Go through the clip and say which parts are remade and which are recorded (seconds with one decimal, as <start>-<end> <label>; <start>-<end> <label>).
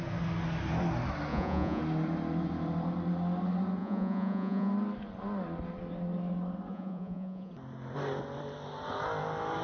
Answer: 0.0-1.3 recorded; 1.3-1.8 remade; 1.8-3.8 recorded; 3.8-4.7 remade; 4.7-6.7 recorded; 6.7-7.5 remade; 7.5-9.6 recorded